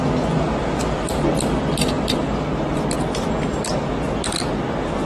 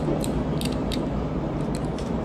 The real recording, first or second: first